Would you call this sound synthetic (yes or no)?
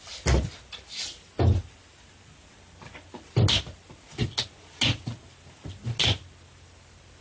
no